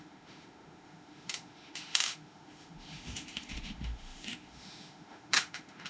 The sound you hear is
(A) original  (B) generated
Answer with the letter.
B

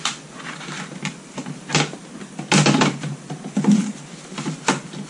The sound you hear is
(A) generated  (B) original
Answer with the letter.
B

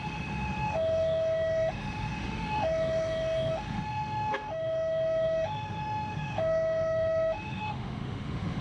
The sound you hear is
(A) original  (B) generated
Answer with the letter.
B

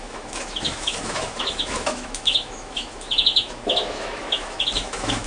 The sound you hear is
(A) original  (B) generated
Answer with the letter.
B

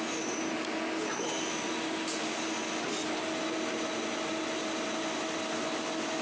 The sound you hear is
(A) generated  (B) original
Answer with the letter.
B